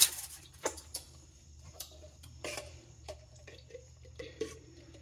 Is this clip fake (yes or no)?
yes